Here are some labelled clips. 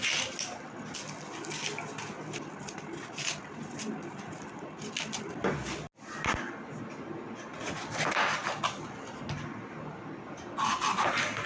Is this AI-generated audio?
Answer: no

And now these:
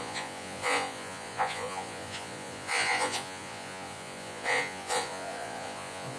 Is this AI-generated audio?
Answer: yes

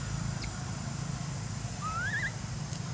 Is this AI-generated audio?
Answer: no